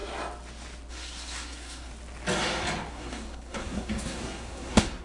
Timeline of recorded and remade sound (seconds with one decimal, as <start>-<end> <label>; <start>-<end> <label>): 0.0-0.9 recorded; 0.9-1.9 remade; 1.9-2.9 recorded; 2.9-5.0 remade